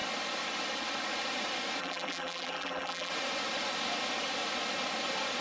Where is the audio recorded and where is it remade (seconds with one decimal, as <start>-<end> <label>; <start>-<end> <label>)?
0.0-1.8 recorded; 1.8-3.1 remade; 3.1-5.4 recorded